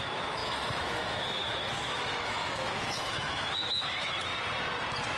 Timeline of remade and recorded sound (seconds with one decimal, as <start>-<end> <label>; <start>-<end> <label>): 0.0-4.3 remade; 4.3-5.2 recorded